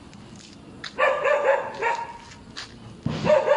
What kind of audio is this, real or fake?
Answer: real